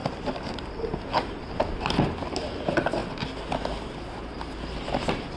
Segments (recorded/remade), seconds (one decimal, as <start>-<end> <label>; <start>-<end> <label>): 0.0-5.4 recorded